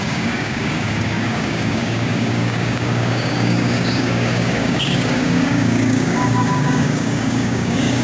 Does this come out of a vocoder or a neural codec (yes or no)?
yes